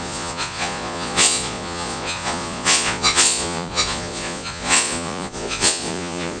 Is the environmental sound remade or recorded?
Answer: remade